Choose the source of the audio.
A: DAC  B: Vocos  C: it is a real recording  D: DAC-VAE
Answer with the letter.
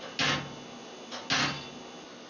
C